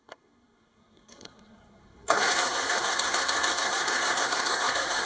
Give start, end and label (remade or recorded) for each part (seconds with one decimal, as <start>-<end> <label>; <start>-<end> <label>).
0.0-5.1 remade